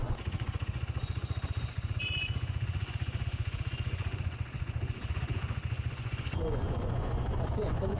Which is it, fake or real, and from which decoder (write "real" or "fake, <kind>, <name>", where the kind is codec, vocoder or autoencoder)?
fake, vocoder, Vocos